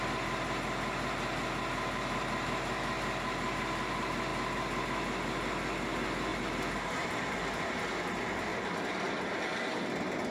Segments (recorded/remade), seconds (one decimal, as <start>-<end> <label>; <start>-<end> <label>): 0.0-10.3 recorded